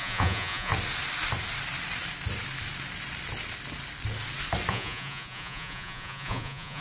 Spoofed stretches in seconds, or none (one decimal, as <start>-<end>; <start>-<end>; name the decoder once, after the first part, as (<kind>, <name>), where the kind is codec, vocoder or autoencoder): 0.0-0.7 (vocoder, Vocos); 4.7-6.8